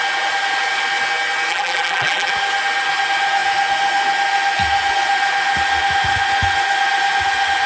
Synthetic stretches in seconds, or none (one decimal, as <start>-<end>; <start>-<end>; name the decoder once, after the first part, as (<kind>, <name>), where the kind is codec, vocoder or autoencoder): 1.5-2.3 (vocoder, BigVGAN v2)